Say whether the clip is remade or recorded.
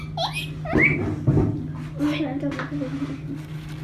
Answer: recorded